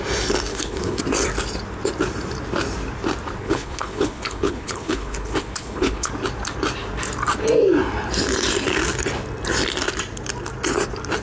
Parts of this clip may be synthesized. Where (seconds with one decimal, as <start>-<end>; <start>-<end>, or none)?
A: 0.5-1.0; 3.4-6.1